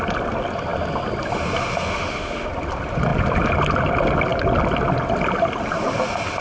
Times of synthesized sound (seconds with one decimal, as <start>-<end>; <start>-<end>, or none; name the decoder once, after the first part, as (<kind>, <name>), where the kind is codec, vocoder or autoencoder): 1.9-2.5 (autoencoder, DAC-VAE)